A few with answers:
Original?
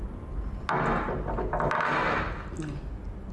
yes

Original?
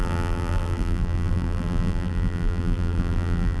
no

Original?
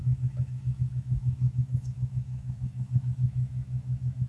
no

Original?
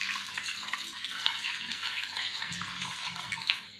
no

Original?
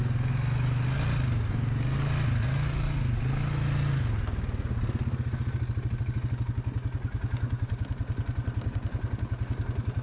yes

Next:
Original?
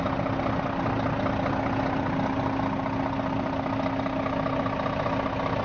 yes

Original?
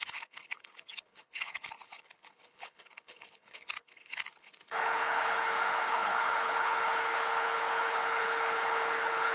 no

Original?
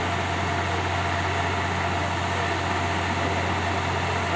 yes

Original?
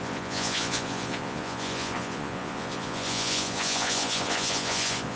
no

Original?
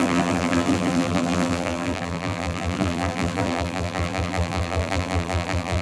no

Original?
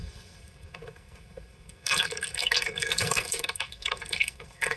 no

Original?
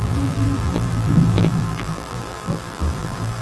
no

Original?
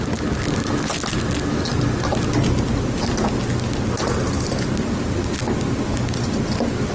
yes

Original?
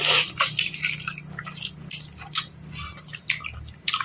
yes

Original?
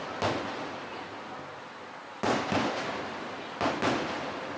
yes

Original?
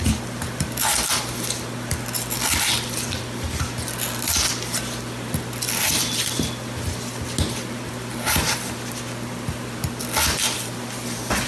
yes